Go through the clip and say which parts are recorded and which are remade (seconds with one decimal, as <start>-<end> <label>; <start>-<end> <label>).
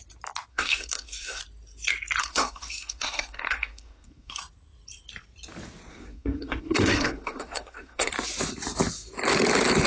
0.0-0.5 recorded; 0.5-1.4 remade; 1.4-2.2 recorded; 2.2-4.4 remade; 4.4-5.9 recorded; 5.9-8.1 remade; 8.1-9.9 recorded